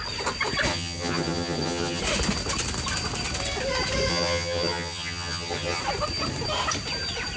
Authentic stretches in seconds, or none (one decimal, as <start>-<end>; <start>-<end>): 0.0-0.7; 2.0-4.1; 5.8-7.4